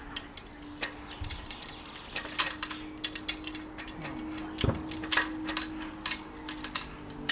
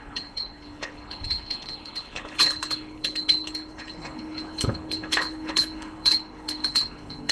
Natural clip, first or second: first